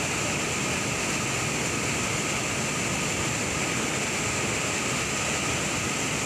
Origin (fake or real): real